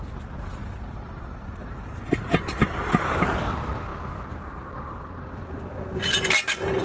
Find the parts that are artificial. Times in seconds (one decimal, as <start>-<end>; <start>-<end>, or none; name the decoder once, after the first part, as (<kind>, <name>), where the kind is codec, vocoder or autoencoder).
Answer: 0.0-3.9 (vocoder, BigVGAN v2)